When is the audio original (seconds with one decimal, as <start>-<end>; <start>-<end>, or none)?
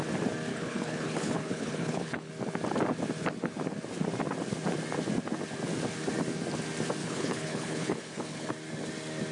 0.0-0.5; 2.3-7.0; 8.5-9.3